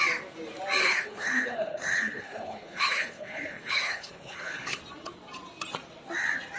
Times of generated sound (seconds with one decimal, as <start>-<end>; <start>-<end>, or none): 0.8-4.8